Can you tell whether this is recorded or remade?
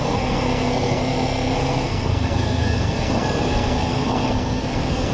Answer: remade